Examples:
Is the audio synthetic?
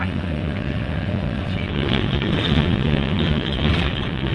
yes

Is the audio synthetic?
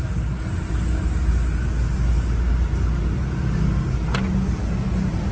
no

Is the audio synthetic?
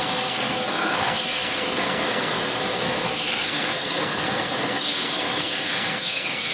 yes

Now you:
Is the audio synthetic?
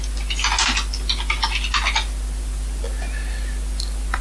no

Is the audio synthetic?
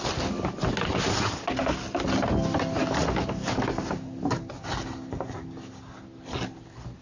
no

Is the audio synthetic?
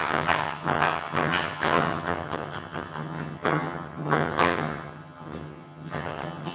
yes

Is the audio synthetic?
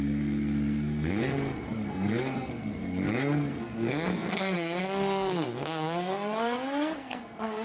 yes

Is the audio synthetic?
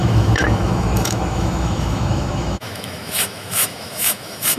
yes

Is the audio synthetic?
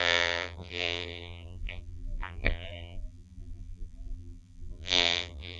yes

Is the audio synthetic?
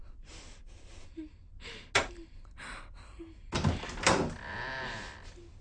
no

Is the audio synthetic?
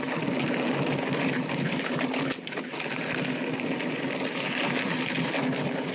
no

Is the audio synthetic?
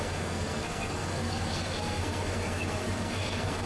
yes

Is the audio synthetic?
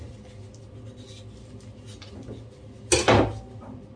no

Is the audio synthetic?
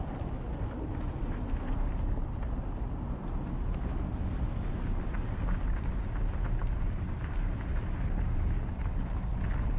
no